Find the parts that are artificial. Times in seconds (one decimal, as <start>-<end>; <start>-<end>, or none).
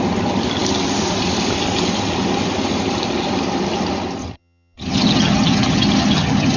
4.2-6.6